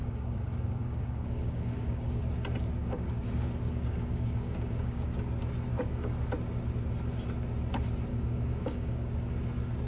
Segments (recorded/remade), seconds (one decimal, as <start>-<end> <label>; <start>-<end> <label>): 0.0-2.2 remade; 2.2-2.8 recorded; 2.8-5.3 remade; 5.3-5.7 recorded; 5.7-6.3 remade; 6.3-8.1 recorded; 8.1-9.1 remade; 9.1-9.9 recorded